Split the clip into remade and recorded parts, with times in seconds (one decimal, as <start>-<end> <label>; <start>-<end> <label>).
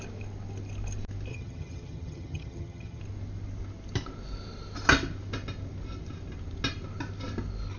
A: 0.0-1.3 recorded; 1.3-3.0 remade; 3.0-7.8 recorded